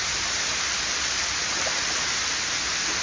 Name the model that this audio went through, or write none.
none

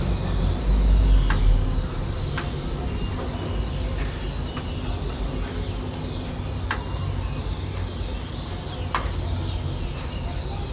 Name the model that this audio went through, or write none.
none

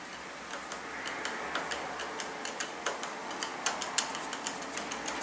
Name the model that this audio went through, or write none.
none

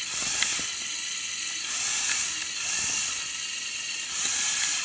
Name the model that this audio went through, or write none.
none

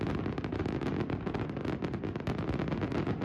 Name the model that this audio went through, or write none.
none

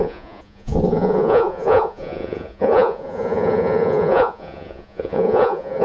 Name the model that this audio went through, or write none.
vocoder, Vocos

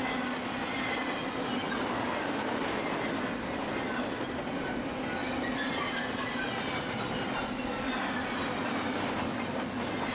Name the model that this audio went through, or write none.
none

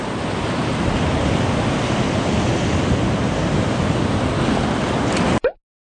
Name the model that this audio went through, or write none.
none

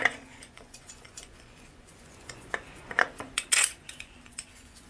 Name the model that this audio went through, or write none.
vocoder, Vocos